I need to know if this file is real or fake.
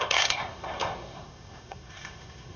fake